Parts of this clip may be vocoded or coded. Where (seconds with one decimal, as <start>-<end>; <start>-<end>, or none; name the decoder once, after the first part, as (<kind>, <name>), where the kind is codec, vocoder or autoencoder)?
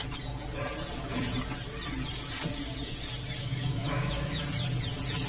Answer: 3.4-4.4 (autoencoder, DAC-VAE)